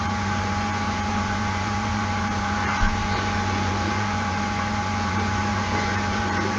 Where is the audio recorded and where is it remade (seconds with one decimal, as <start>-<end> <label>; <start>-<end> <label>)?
0.0-6.6 remade